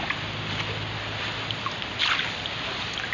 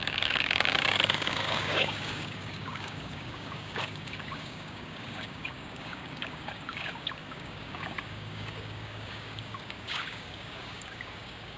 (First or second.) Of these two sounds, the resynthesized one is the second